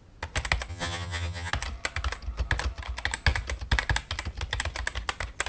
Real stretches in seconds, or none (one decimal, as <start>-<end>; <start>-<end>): 0.0-0.7; 1.5-5.5